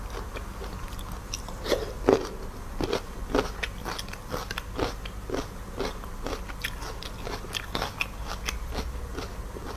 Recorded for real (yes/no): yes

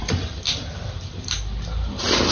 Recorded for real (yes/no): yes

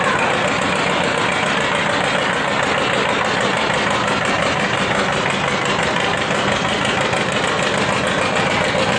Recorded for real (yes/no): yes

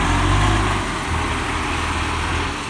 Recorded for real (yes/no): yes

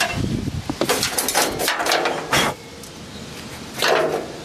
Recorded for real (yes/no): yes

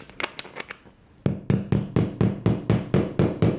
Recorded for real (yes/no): yes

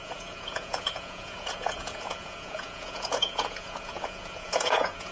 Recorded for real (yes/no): no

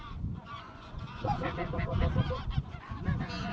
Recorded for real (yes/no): no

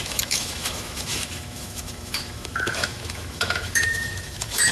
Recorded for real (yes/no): no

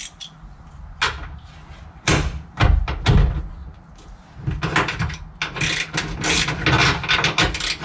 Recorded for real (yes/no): yes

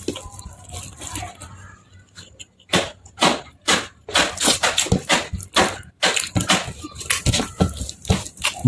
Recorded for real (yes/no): yes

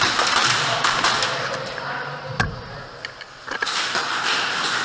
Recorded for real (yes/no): no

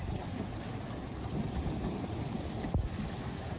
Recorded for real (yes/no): yes